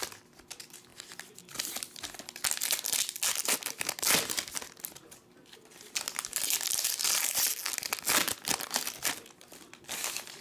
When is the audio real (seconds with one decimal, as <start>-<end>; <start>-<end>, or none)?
0.0-10.4